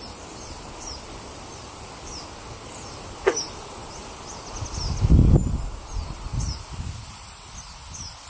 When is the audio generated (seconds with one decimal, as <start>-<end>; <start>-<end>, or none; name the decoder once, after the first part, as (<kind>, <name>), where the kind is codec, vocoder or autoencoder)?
0.0-3.8 (vocoder, BigVGAN v2); 5.2-6.3